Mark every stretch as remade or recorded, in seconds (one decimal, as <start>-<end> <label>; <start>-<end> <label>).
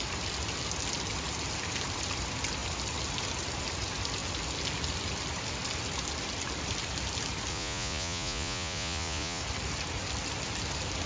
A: 0.0-7.5 recorded; 7.5-9.4 remade; 9.4-11.1 recorded